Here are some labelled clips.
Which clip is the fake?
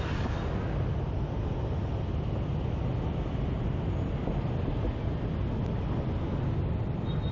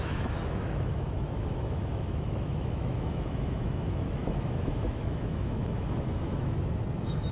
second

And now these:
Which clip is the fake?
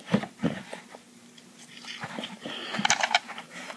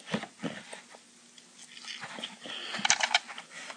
first